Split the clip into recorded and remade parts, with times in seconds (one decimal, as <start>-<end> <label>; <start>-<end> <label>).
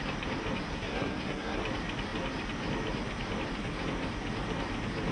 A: 0.0-0.7 recorded; 0.7-1.6 remade; 1.6-5.1 recorded